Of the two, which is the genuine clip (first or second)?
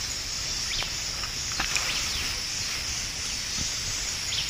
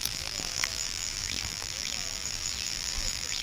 first